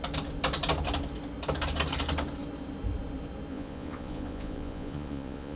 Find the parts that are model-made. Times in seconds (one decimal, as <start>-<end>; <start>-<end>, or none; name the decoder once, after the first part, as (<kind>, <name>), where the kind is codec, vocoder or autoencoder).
3.5-5.6 (vocoder, Vocos)

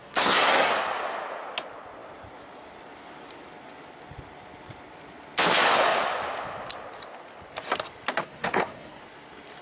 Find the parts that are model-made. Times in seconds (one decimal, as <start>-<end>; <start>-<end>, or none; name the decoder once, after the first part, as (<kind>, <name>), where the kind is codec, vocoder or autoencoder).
0.0-0.7 (codec, SNAC); 8.2-9.0

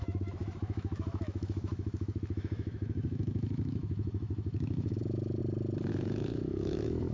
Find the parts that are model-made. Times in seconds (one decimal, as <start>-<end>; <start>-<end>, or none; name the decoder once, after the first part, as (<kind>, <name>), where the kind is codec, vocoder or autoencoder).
0.0-5.4 (autoencoder, DAC-VAE); 5.9-7.1

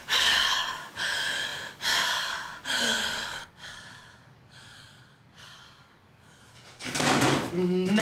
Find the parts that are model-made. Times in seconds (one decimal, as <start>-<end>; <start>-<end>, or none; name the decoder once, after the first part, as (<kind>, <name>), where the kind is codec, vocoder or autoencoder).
0.0-8.0 (codec, DAC)